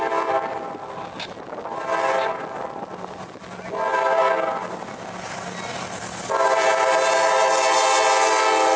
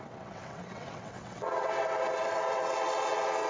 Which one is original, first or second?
first